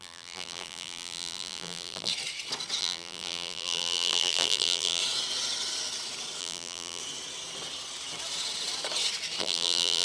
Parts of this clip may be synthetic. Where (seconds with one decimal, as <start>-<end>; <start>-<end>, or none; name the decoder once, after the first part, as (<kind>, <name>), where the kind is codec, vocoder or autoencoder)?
0.0-2.1 (vocoder, BigVGAN v2); 2.8-5.0; 6.4-7.0; 9.4-10.0